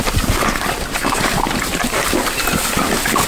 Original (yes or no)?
yes